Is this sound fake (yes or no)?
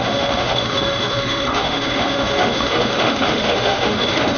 yes